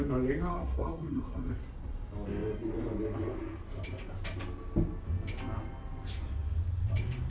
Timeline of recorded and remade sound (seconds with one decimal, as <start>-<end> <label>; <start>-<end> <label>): 0.0-0.5 recorded; 0.5-1.5 remade; 1.5-7.3 recorded